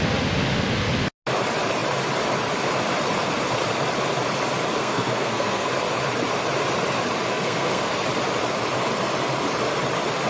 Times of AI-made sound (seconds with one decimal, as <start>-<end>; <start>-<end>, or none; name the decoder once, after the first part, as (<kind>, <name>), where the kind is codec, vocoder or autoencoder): 4.8-5.7 (codec, SNAC); 7.3-7.9